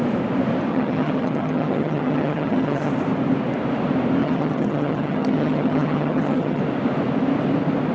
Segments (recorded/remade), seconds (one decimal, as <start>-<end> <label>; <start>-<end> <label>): 0.0-0.7 recorded; 0.7-2.9 remade; 2.9-4.2 recorded; 4.2-6.6 remade; 6.6-7.9 recorded

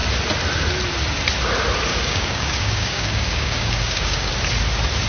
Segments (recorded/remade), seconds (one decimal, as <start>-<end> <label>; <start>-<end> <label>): 0.0-1.9 recorded; 1.9-4.3 remade; 4.3-5.1 recorded

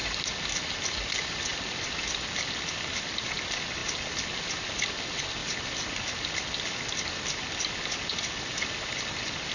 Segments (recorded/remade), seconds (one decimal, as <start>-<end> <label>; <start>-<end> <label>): 0.0-9.5 recorded

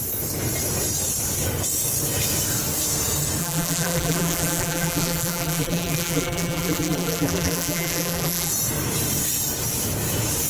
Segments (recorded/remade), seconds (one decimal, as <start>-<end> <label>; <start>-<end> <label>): 0.0-3.4 recorded; 3.4-8.5 remade; 8.5-10.5 recorded

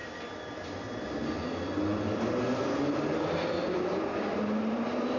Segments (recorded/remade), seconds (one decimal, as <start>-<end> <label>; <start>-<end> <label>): 0.0-5.2 recorded

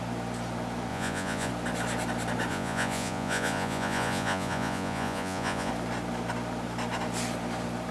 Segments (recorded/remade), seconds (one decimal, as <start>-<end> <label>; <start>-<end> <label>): 0.0-0.9 recorded; 0.9-1.5 remade; 1.5-2.5 recorded; 2.5-5.7 remade; 5.7-7.9 recorded

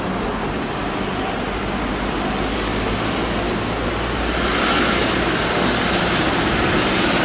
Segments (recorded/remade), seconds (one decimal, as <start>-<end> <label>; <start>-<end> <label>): 0.0-7.2 recorded